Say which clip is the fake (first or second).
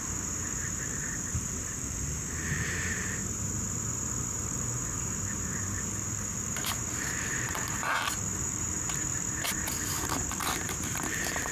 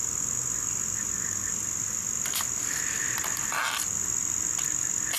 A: first